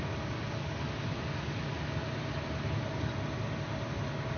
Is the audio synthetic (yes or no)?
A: no